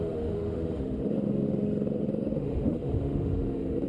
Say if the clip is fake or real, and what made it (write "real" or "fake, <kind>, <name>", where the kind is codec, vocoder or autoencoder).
fake, autoencoder, DAC-VAE